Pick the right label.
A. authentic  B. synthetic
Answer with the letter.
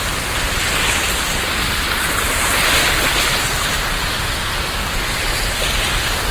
A